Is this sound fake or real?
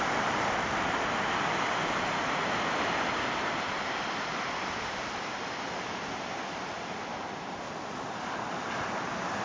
real